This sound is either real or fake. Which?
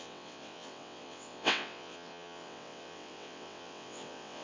fake